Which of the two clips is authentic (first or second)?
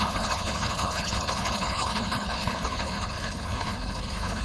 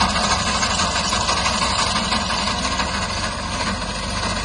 second